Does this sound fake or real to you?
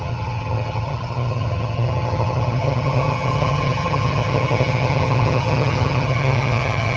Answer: fake